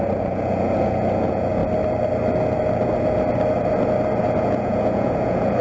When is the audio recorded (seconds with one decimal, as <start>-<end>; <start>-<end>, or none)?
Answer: 1.6-4.2

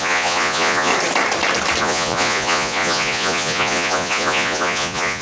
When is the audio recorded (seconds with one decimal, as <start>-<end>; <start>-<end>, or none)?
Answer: 0.9-1.8